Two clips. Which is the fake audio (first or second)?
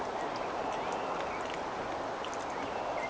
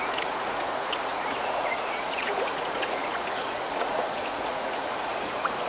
second